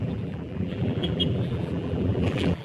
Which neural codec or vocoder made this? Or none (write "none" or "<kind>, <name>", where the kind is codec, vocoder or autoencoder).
vocoder, BigVGAN v2